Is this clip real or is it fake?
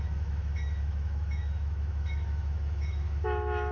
fake